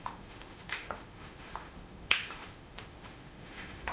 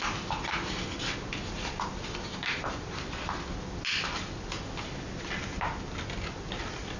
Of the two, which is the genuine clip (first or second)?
second